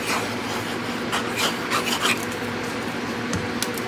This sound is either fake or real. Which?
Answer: real